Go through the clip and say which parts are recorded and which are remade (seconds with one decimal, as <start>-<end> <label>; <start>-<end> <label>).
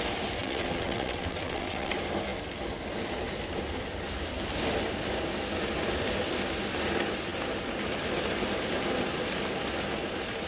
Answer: 0.0-0.4 recorded; 0.4-1.9 remade; 1.9-10.5 recorded